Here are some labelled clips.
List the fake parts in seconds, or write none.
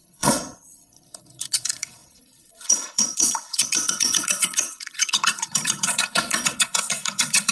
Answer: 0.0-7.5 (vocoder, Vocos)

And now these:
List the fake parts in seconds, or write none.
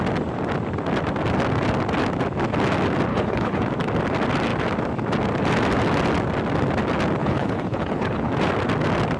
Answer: 3.1-3.6 (codec, HILCodec); 7.2-8.3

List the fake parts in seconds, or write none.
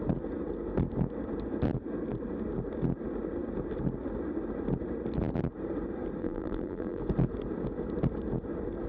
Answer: 6.2-7.0 (vocoder, BigVGAN v2)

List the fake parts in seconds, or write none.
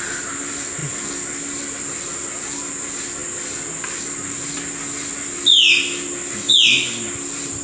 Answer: none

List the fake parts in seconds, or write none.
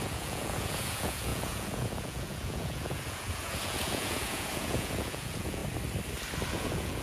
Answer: 0.0-5.6 (vocoder, Vocos); 6.5-7.0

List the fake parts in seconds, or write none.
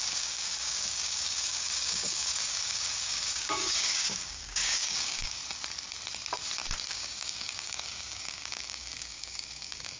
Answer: 0.0-5.4 (codec, DAC); 6.9-10.0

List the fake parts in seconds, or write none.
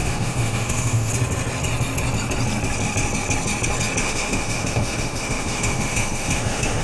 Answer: 0.0-1.1 (autoencoder, DAC-VAE); 4.0-6.8